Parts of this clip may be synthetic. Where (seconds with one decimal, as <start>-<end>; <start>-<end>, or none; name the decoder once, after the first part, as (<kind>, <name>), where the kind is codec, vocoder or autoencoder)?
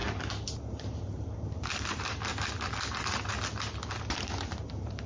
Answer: 0.5-2.3 (vocoder, BigVGAN v2); 4.2-5.1